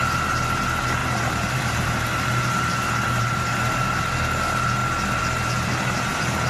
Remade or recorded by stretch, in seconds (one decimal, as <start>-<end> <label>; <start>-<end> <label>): 0.0-1.0 recorded; 1.0-4.0 remade; 4.0-4.8 recorded; 4.8-5.7 remade; 5.7-6.5 recorded